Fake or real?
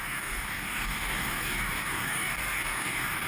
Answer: fake